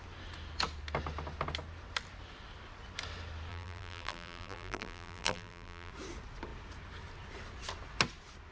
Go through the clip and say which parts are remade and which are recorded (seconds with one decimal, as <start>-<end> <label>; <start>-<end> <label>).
0.0-3.5 recorded; 3.5-5.9 remade; 5.9-8.5 recorded